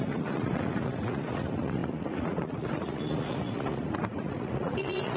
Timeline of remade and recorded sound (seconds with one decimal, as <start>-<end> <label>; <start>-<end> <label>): 0.0-5.2 remade